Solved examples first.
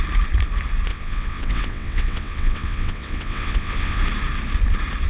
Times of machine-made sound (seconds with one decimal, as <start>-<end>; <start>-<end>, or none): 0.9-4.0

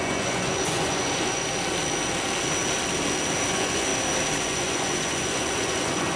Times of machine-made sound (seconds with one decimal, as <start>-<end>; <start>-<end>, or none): 0.0-1.4; 3.5-3.9; 4.4-6.2

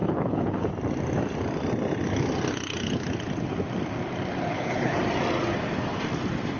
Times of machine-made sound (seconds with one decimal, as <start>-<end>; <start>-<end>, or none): 0.0-0.7; 4.5-5.0

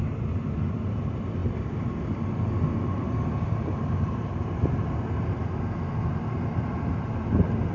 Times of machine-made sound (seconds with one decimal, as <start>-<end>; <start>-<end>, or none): none